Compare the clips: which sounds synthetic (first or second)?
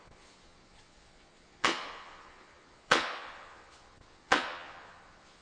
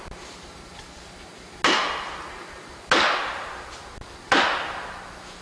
first